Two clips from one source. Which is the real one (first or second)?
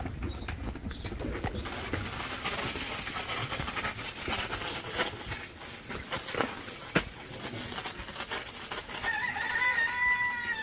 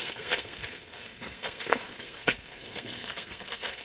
first